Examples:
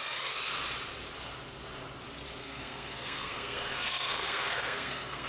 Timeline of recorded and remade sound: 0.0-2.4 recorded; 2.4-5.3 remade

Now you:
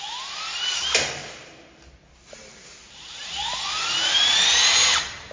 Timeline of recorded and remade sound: 0.0-5.3 recorded

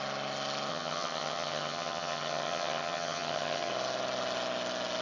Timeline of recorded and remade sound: 0.0-0.7 recorded; 0.7-3.7 remade; 3.7-5.0 recorded

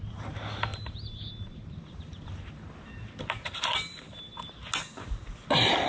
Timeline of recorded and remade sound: 0.0-0.7 recorded; 0.7-4.2 remade; 4.2-5.9 recorded